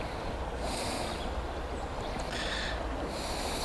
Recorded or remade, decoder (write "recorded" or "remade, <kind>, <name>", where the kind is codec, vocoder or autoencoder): recorded